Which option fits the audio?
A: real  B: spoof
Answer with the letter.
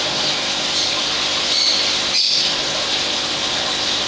A